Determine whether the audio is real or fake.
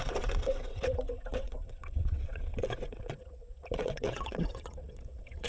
fake